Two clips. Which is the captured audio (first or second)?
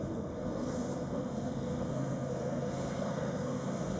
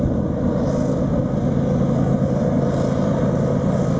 second